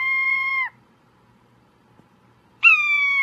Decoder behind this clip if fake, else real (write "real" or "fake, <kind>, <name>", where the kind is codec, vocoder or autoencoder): fake, vocoder, BigVGAN v2